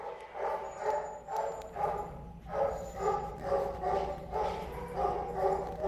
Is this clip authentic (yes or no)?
yes